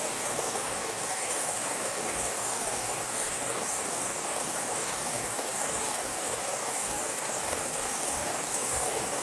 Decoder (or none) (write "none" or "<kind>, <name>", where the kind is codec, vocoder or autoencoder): codec, DAC